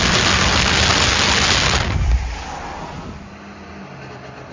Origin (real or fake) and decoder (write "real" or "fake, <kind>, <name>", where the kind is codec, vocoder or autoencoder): real